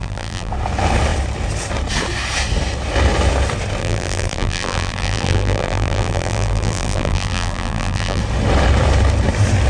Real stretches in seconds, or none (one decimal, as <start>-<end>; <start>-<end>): 0.5-3.8; 8.2-9.7

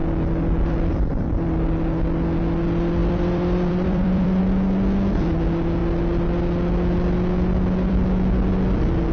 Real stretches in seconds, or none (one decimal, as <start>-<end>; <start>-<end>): 0.0-3.0; 4.4-9.1

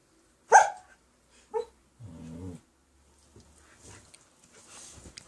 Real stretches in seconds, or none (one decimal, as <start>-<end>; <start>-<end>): 0.0-5.3

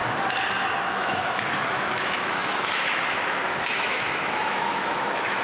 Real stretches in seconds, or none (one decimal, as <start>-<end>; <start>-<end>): 0.0-0.8